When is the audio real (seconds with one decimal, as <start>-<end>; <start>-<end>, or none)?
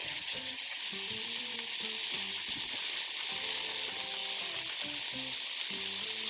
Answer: 0.8-6.3